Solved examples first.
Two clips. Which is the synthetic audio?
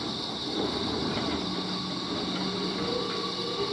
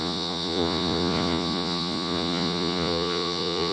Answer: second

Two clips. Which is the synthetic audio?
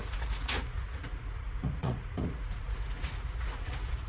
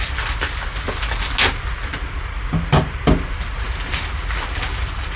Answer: first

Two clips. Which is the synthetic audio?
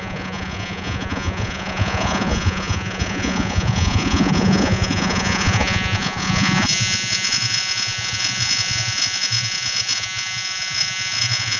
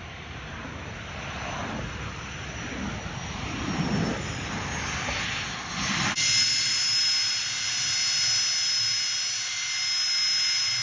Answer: first